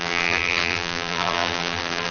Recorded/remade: remade